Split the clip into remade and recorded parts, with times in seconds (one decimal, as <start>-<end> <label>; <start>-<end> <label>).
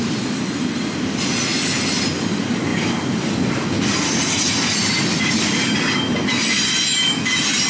0.0-7.7 recorded